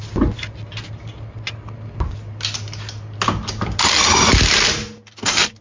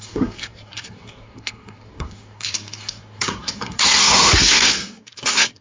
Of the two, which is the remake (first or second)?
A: second